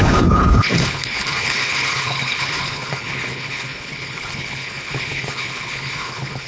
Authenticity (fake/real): fake